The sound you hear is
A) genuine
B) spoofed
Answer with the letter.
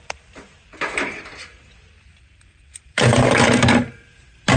B